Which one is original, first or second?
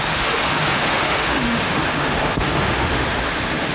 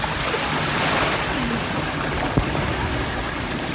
second